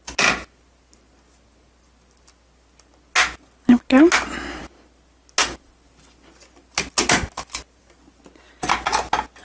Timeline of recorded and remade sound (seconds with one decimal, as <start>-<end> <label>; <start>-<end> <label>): 0.0-9.4 recorded